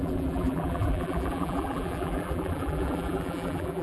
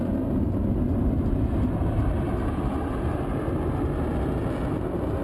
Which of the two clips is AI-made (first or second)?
first